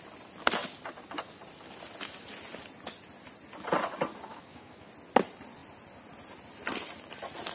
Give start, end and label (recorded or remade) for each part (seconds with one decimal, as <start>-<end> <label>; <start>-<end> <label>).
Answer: 0.0-4.3 recorded; 4.3-4.9 remade; 4.9-7.5 recorded